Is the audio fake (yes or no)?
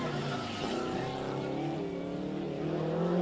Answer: no